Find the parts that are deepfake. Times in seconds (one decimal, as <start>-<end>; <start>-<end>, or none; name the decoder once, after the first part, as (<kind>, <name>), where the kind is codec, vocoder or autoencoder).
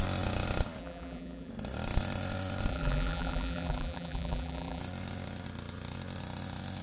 0.8-1.5 (vocoder, BigVGAN v2); 2.7-4.8